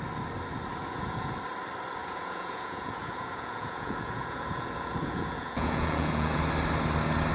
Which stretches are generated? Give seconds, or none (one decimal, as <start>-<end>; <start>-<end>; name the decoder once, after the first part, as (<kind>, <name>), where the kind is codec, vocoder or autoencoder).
0.8-1.3 (vocoder, Vocos); 2.0-6.4